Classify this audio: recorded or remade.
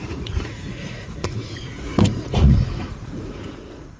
remade